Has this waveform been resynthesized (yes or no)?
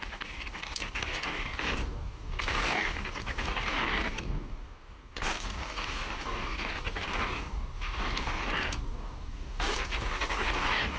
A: yes